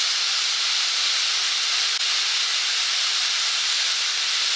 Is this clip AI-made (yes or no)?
no